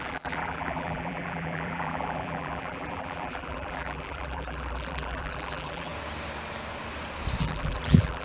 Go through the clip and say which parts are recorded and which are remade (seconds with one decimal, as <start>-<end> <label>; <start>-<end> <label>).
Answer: 0.0-5.9 remade; 5.9-7.4 recorded; 7.4-8.2 remade